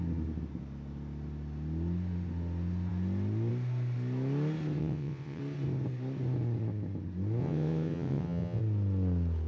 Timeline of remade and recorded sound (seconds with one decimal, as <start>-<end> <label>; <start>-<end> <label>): 0.0-4.8 recorded; 4.8-5.4 remade; 5.4-7.4 recorded; 7.4-8.6 remade; 8.6-9.5 recorded